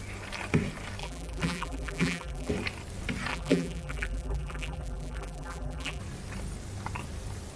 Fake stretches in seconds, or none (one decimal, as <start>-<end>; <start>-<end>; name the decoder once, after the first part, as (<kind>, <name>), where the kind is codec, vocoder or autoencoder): 1.0-2.5 (vocoder, BigVGAN v2); 3.3-6.0